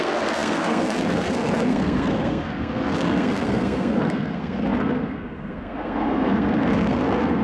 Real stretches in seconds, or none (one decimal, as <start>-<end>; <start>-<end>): none